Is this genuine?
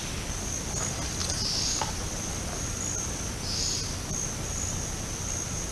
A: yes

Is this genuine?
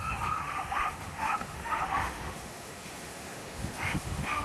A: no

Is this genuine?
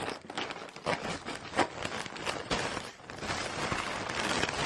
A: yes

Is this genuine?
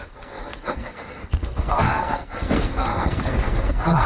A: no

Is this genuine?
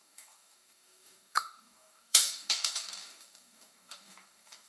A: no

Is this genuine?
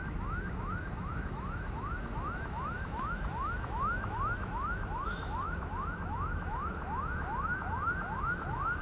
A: no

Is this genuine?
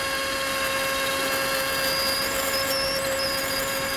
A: yes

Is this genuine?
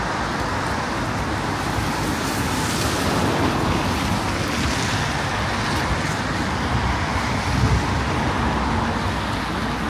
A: yes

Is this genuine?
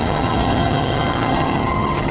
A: no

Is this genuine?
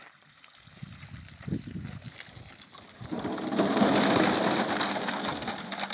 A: yes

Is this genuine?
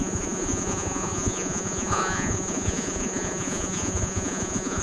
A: no